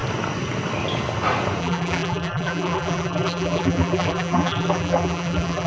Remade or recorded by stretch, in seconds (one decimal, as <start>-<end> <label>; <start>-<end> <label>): 0.0-1.6 recorded; 1.6-5.7 remade